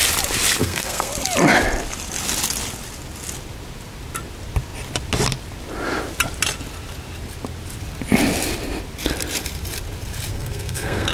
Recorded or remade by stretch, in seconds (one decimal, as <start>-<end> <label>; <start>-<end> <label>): 0.0-0.6 recorded; 0.6-1.1 remade; 1.1-10.3 recorded; 10.3-11.1 remade